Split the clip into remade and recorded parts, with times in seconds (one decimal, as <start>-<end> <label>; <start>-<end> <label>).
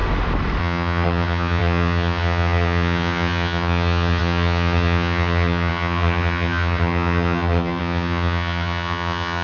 0.0-0.6 recorded; 0.6-9.4 remade